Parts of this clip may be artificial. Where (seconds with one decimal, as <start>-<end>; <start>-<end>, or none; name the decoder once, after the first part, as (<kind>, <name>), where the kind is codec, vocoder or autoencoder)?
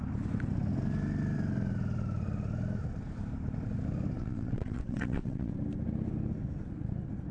4.2-5.5 (vocoder, WaveNeXt)